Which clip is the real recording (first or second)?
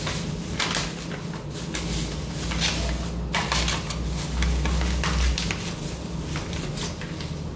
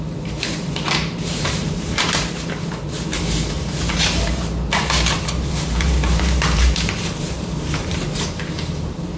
first